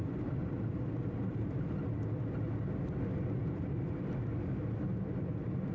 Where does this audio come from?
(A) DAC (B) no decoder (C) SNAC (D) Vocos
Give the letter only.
B